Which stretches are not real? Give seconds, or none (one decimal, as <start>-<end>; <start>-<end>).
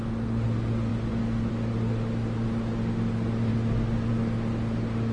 none